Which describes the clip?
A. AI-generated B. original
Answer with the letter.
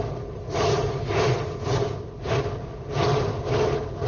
B